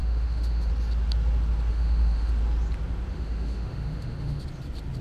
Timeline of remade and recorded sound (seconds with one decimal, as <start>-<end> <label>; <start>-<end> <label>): 0.0-0.7 remade; 0.7-1.7 recorded; 1.7-2.3 remade; 2.3-3.1 recorded; 3.1-4.4 remade; 4.4-5.0 recorded